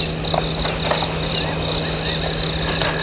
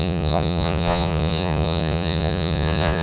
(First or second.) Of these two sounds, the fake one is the second